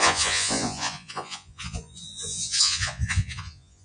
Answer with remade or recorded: remade